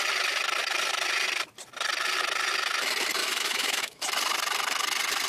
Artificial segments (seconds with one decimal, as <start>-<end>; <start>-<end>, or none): 3.2-4.0